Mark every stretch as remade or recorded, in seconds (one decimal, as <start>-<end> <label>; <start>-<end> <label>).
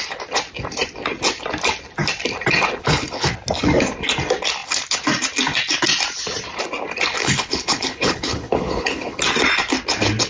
0.0-2.8 recorded; 2.8-3.3 remade; 3.3-7.2 recorded; 7.2-9.2 remade; 9.2-10.3 recorded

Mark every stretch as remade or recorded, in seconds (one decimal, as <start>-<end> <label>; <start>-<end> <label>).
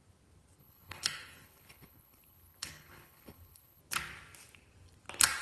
0.0-0.6 recorded; 0.6-3.8 remade; 3.8-5.4 recorded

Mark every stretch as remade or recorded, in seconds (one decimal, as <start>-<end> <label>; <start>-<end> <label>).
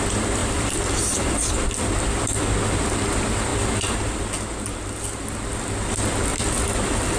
0.0-0.4 recorded; 0.4-1.9 remade; 1.9-3.5 recorded; 3.5-4.2 remade; 4.2-6.3 recorded; 6.3-7.2 remade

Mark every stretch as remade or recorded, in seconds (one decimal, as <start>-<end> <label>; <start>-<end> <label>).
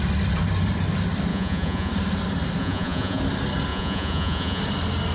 0.0-1.3 recorded; 1.3-1.9 remade; 1.9-2.6 recorded; 2.6-3.2 remade; 3.2-3.7 recorded; 3.7-4.6 remade; 4.6-5.1 recorded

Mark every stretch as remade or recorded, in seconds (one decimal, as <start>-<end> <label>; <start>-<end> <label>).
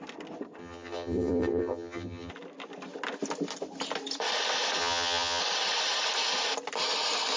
0.0-0.6 recorded; 0.6-2.3 remade; 2.3-4.8 recorded; 4.8-5.4 remade; 5.4-7.4 recorded